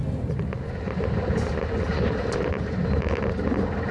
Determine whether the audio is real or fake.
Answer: real